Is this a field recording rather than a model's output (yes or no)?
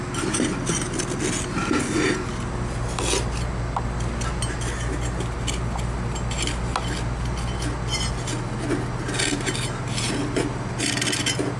yes